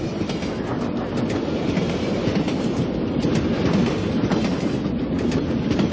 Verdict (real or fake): real